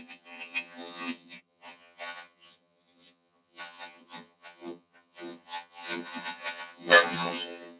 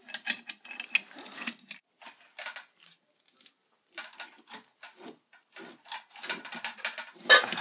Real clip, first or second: second